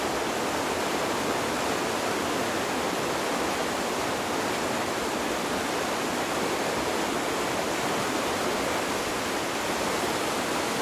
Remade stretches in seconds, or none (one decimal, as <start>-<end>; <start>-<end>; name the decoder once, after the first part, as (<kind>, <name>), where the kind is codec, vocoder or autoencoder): none